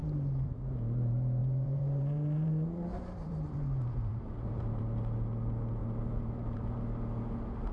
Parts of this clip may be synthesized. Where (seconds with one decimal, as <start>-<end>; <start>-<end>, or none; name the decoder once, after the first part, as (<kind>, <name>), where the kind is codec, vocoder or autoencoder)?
0.0-0.6 (vocoder, BigVGAN v2); 1.4-4.8; 5.8-6.8